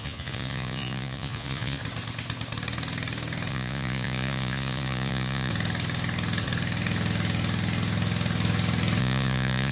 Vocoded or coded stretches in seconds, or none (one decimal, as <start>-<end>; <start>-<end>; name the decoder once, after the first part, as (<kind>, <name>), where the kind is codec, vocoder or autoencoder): 0.0-1.8 (vocoder, Vocos); 3.5-5.5; 9.0-9.7